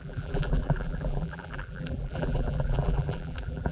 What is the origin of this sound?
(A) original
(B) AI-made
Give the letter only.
B